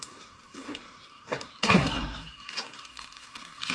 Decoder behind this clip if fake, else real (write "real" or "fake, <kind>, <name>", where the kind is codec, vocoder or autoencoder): fake, codec, SNAC